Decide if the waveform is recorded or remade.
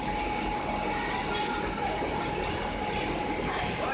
recorded